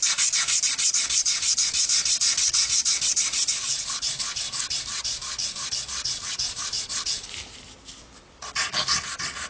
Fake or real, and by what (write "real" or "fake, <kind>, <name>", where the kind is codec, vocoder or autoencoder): real